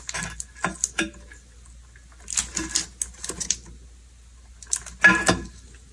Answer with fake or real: real